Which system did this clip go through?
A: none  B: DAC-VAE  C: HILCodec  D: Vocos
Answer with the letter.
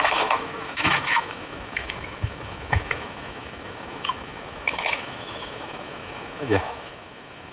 B